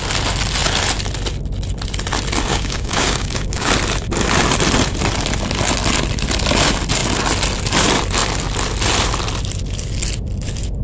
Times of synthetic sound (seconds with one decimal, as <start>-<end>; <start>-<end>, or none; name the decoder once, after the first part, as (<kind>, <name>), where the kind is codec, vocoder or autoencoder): 2.5-3.7 (codec, DAC)